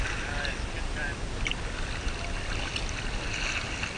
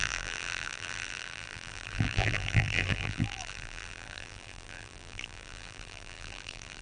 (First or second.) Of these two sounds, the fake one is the second